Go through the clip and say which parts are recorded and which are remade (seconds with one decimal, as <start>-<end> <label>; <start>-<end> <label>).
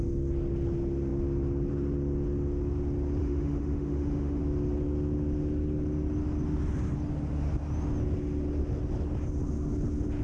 0.0-3.2 recorded; 3.2-4.4 remade; 4.4-10.2 recorded